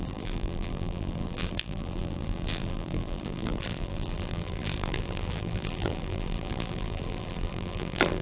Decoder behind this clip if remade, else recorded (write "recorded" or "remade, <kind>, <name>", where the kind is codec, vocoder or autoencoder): remade, vocoder, BigVGAN v2